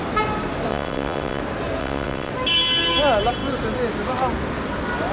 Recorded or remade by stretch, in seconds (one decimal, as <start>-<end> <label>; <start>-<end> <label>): 0.0-0.7 recorded; 0.7-1.4 remade; 1.4-1.8 recorded; 1.8-2.3 remade; 2.3-5.1 recorded